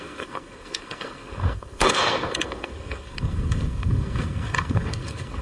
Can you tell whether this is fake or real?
fake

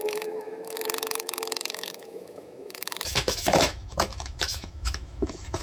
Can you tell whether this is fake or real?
fake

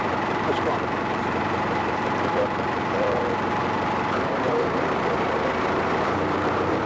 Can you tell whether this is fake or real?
fake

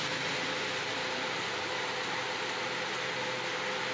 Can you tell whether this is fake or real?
real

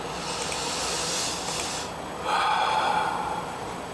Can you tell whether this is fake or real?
real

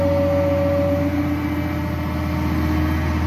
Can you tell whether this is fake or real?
real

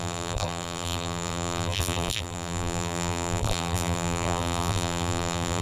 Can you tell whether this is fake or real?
fake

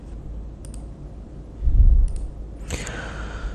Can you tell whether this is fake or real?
real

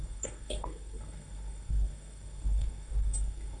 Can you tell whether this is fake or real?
fake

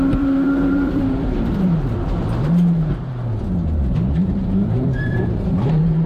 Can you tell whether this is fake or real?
fake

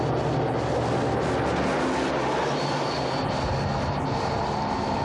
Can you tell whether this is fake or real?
real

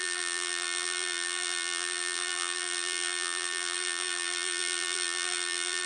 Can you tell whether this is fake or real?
fake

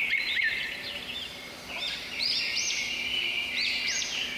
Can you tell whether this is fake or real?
fake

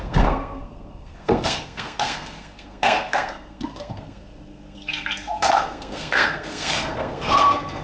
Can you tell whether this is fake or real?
fake